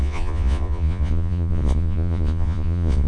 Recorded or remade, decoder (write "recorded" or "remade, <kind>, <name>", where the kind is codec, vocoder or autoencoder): remade, vocoder, Vocos